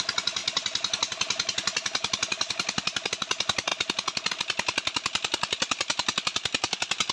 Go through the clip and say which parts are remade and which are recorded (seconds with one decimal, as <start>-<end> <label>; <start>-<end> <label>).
0.0-0.4 recorded; 0.4-3.1 remade; 3.1-7.1 recorded